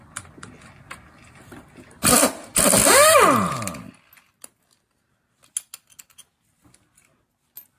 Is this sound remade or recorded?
recorded